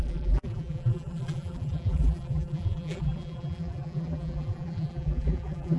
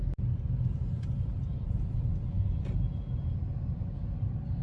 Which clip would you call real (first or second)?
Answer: second